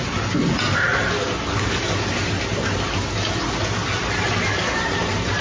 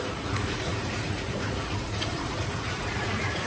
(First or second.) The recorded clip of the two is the first